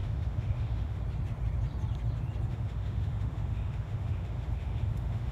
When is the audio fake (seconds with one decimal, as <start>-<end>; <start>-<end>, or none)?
0.0-1.0; 2.5-5.3